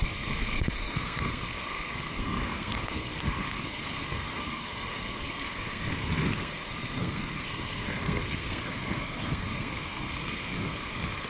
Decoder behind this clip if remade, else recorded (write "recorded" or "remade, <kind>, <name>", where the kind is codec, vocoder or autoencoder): remade, codec, SNAC